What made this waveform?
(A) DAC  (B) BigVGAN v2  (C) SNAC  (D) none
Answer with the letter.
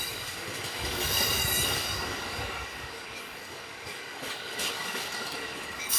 A